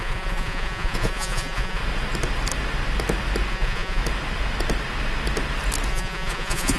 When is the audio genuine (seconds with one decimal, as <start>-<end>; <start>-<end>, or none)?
1.8-3.5; 4.0-5.9